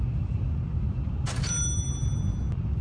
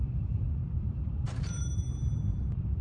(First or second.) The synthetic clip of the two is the second